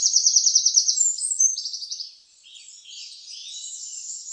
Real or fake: fake